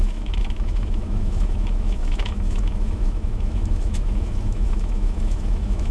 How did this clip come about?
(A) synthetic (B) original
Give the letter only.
A